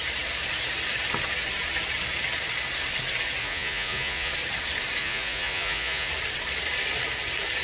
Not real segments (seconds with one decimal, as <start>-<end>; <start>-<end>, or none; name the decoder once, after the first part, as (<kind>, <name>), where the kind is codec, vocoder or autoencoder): 3.4-4.3 (vocoder, Vocos); 5.0-6.1